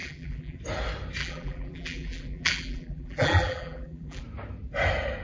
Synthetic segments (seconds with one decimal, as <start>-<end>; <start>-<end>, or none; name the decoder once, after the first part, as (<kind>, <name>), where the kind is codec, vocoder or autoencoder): 0.0-0.6 (vocoder, BigVGAN v2); 1.2-4.2